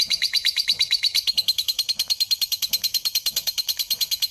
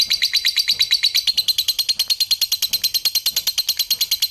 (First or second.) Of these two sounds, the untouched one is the second